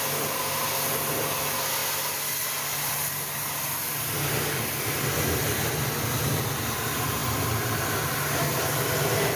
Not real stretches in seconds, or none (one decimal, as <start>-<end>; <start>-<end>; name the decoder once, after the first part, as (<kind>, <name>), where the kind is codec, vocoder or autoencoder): none